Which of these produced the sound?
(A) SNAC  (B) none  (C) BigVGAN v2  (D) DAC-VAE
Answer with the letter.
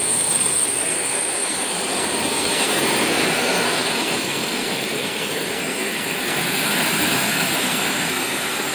A